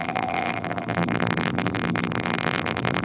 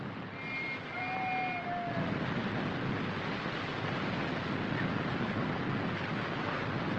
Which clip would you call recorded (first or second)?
second